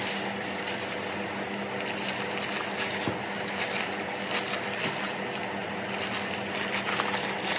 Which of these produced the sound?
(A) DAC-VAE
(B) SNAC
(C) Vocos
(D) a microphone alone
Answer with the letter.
D